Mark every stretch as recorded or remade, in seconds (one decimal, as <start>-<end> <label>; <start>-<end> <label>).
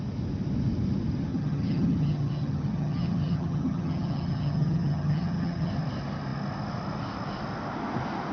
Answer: 0.0-1.3 recorded; 1.3-5.7 remade; 5.7-8.3 recorded